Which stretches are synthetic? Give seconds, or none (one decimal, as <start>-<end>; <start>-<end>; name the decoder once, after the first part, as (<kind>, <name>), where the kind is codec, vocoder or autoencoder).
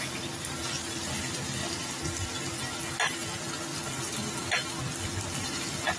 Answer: none